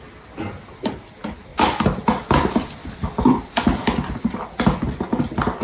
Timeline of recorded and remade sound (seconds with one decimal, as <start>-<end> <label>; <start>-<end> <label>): 0.0-5.6 recorded